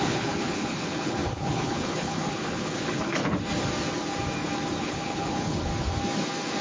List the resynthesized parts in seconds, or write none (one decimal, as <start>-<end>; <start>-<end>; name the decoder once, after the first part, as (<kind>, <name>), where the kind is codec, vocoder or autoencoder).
0.0-3.2 (codec, HILCodec); 4.8-5.7